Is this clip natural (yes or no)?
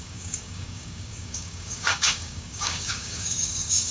no